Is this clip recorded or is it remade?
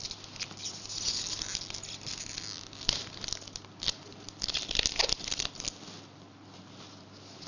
recorded